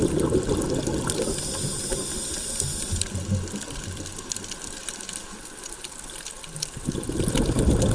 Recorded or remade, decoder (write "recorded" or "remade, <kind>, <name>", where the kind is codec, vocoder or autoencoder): recorded